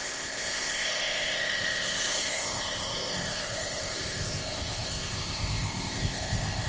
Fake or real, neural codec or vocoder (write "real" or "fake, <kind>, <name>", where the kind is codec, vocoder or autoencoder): fake, codec, ZipCodec